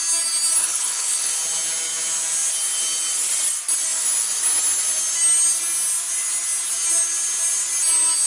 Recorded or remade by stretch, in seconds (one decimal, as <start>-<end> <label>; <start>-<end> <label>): 0.0-0.6 recorded; 0.6-1.3 remade; 1.3-8.3 recorded